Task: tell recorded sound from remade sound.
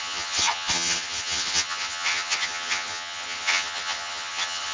remade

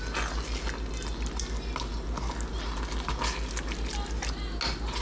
recorded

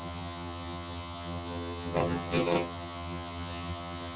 remade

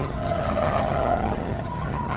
remade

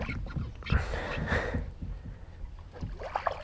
recorded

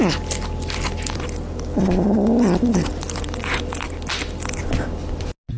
recorded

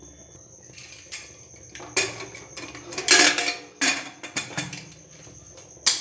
recorded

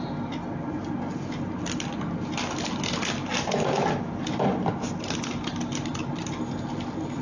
recorded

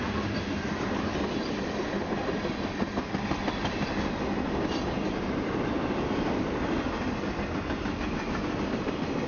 recorded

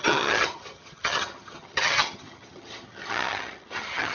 remade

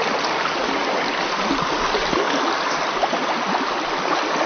recorded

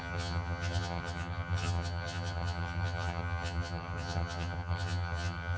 remade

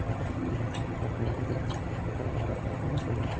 remade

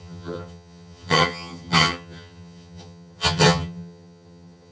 remade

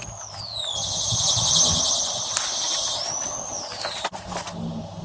recorded